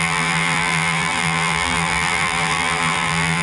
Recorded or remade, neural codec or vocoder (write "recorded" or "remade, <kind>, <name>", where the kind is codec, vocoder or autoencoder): remade, vocoder, BigVGAN v2